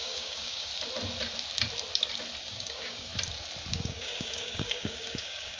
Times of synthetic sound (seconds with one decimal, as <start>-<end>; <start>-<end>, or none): 0.0-0.7; 2.5-3.1; 3.7-5.6